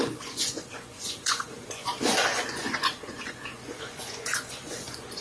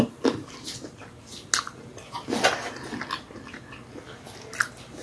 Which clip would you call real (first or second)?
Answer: second